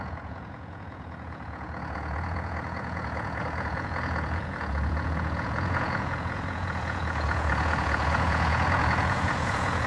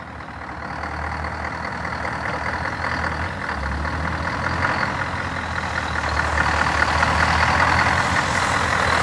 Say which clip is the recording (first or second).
second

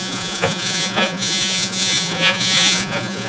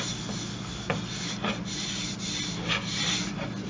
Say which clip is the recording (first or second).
second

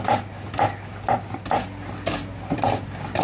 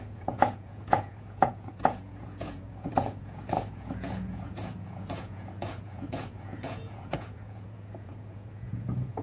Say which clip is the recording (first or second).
first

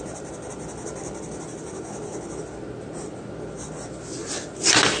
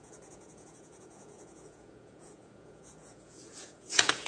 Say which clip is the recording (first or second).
first